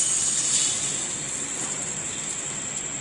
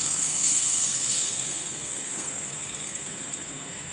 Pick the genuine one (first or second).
first